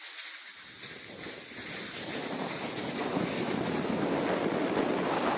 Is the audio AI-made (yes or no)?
no